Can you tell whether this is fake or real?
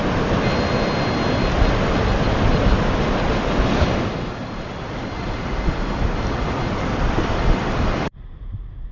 real